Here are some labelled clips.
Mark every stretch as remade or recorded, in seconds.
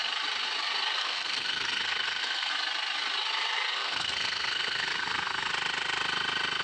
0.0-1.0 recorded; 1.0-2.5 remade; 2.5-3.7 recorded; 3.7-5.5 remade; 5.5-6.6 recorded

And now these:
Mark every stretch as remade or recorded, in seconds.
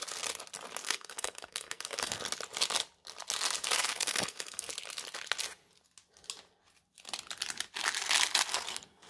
0.0-0.8 recorded; 0.8-2.2 remade; 2.2-3.8 recorded; 3.8-4.7 remade; 4.7-8.5 recorded; 8.5-9.1 remade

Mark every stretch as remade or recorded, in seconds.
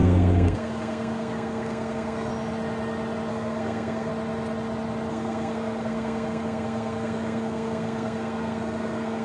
0.0-2.3 remade; 2.3-3.3 recorded; 3.3-4.1 remade; 4.1-5.1 recorded; 5.1-9.2 remade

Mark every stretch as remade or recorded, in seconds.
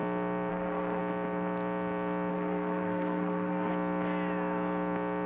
0.0-0.5 recorded; 0.5-1.0 remade; 1.0-2.3 recorded; 2.3-3.7 remade; 3.7-5.3 recorded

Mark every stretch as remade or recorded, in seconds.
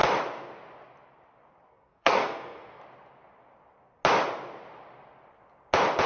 0.0-1.7 recorded; 1.7-2.8 remade; 2.8-6.1 recorded